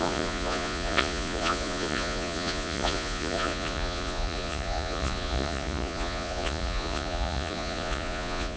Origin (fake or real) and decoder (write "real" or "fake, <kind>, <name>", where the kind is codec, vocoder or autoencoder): fake, vocoder, Vocos